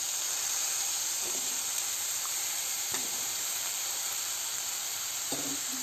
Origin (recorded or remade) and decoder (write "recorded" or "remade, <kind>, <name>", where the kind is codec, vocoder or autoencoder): remade, vocoder, BigVGAN v2